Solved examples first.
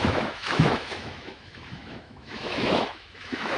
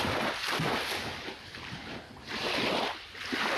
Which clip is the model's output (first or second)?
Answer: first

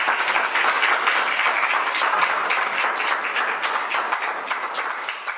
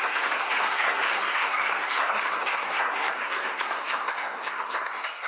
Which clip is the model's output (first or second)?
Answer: second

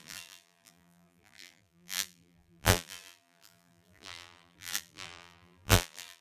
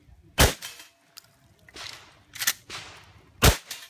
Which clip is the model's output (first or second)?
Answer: first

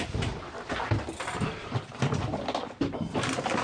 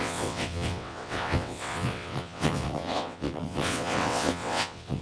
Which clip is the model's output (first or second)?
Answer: second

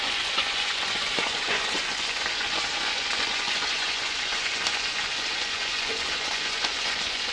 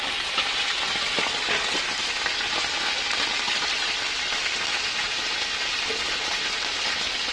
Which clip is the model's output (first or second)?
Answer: first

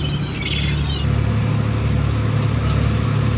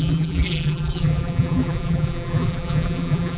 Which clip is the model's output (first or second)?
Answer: second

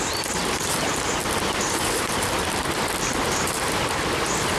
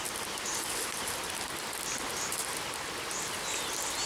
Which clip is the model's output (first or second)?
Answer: first